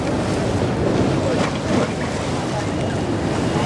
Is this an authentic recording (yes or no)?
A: yes